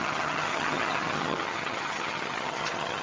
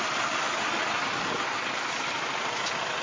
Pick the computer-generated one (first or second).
first